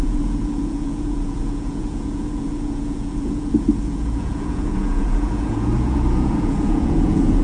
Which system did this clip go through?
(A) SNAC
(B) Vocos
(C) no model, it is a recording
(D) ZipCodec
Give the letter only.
B